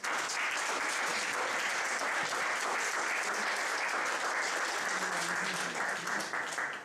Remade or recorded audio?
recorded